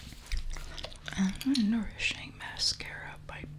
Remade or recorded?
recorded